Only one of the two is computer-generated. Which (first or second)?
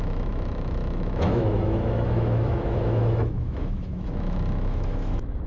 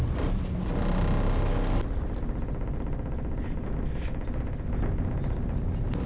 first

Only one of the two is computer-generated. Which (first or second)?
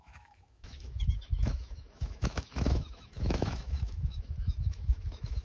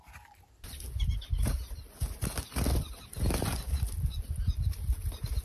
first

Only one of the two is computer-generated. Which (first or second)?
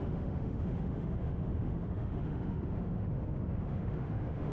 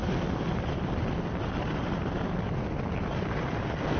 first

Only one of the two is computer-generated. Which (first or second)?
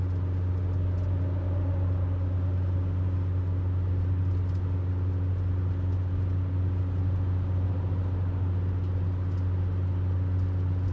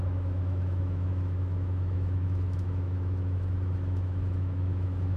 second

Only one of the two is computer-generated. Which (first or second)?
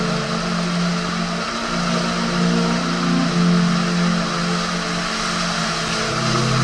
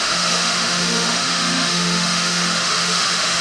second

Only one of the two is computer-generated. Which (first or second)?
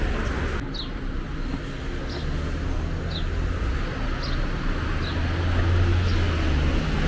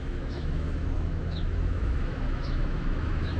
second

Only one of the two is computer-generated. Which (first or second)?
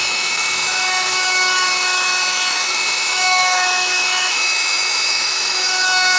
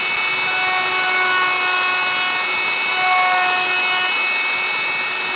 first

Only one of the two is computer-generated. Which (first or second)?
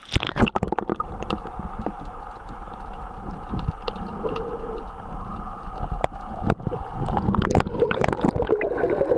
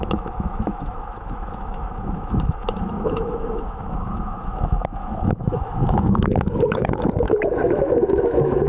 second